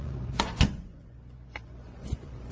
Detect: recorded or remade remade